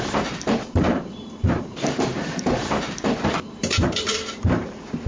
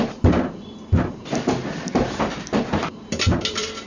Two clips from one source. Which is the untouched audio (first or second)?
second